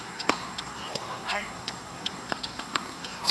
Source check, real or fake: fake